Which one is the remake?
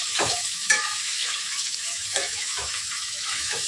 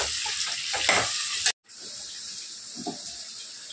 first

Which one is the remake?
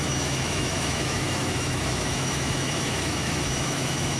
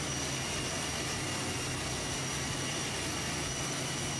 first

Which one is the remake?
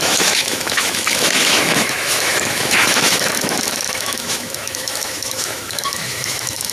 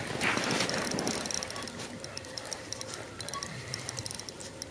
first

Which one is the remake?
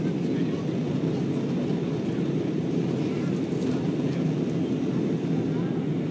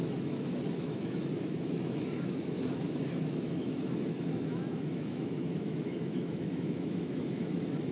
second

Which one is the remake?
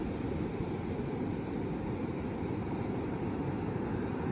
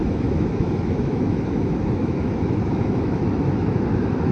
second